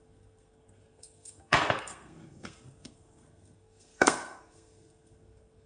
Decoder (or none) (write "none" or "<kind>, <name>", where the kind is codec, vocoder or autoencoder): codec, SNAC